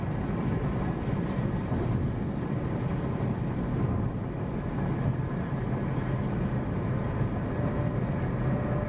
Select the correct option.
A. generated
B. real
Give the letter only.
B